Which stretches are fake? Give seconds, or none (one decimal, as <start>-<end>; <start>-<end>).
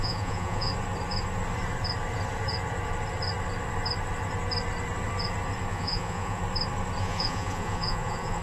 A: 0.0-0.7; 5.7-6.4; 7.0-8.4